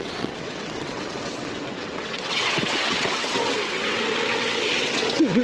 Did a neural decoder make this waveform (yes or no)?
yes